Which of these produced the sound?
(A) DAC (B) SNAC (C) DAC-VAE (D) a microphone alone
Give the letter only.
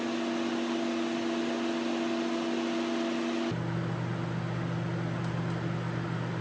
D